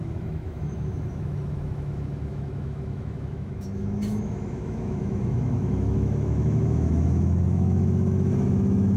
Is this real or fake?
fake